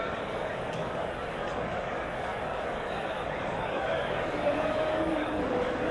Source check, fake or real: fake